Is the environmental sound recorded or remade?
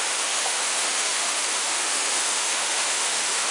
remade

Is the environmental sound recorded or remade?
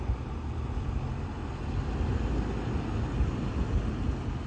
recorded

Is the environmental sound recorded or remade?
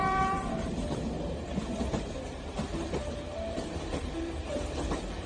remade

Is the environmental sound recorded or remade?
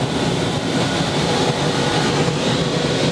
recorded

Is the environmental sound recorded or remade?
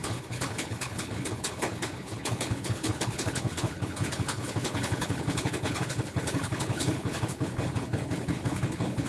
remade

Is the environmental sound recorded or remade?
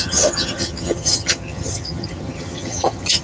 remade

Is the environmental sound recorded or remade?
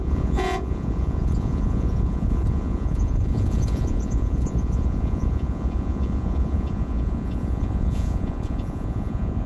remade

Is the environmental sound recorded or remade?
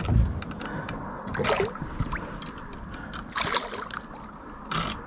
recorded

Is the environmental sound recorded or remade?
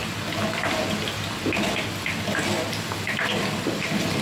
recorded